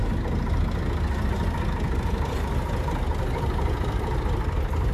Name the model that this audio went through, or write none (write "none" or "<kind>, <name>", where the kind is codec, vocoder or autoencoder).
none